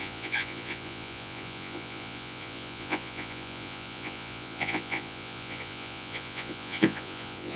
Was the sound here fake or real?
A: fake